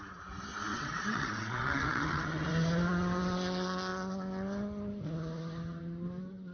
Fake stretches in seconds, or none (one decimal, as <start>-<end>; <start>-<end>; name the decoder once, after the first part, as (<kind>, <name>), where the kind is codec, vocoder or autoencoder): 0.7-2.5 (vocoder, WaveNeXt)